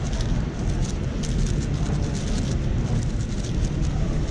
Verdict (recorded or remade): recorded